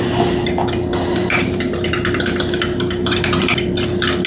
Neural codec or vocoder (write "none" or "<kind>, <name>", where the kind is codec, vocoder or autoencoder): none